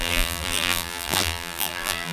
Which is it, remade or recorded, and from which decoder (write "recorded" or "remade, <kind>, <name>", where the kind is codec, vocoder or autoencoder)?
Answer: remade, vocoder, BigVGAN v2